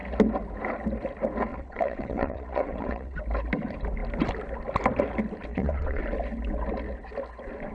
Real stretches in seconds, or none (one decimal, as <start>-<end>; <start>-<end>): 0.0-1.5; 3.2-5.5; 6.0-7.7